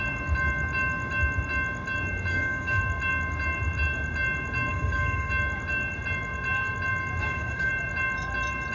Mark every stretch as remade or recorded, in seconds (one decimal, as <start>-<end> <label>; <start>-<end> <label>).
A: 0.0-2.3 recorded; 2.3-2.8 remade; 2.8-4.7 recorded; 4.7-5.3 remade; 5.3-7.2 recorded; 7.2-7.7 remade; 7.7-8.7 recorded